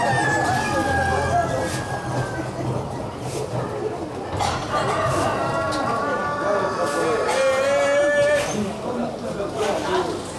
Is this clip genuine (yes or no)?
yes